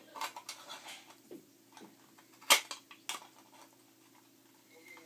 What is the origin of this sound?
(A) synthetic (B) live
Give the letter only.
B